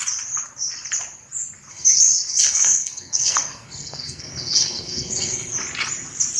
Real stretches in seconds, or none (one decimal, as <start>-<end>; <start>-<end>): 0.0-1.7; 5.5-6.4